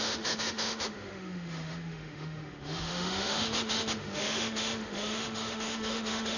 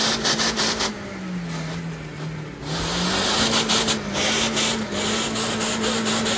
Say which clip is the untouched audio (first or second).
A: second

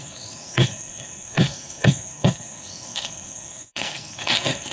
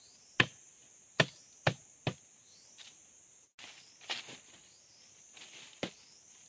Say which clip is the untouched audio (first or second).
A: second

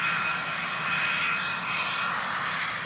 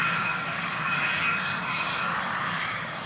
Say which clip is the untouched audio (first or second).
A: first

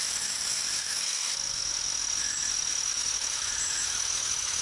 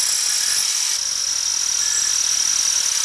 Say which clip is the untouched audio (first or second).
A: second